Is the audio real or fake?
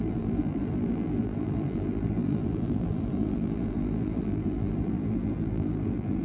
fake